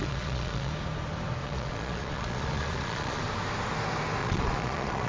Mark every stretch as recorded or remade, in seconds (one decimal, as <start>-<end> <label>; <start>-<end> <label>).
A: 0.0-0.7 remade; 0.7-1.4 recorded; 1.4-3.2 remade; 3.2-4.2 recorded; 4.2-5.1 remade